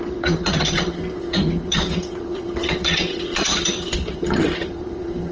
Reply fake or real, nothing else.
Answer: fake